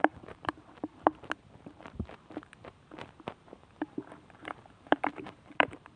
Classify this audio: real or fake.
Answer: fake